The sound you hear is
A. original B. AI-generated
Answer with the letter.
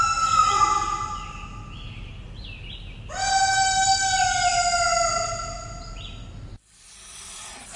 A